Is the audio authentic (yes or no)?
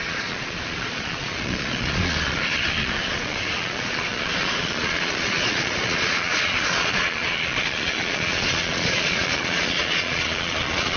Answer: no